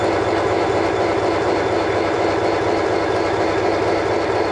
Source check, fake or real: fake